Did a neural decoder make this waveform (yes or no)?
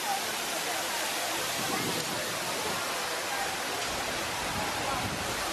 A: no